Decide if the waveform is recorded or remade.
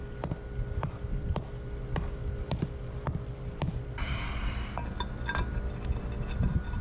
recorded